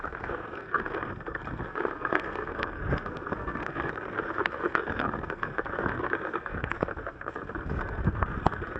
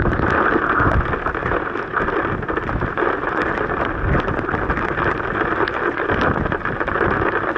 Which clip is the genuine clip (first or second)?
second